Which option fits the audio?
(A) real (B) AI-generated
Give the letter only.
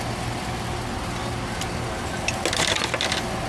A